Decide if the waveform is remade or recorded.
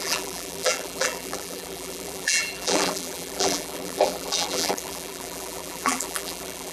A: remade